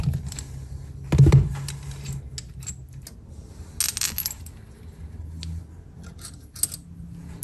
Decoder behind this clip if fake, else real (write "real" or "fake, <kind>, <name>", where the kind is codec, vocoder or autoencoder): real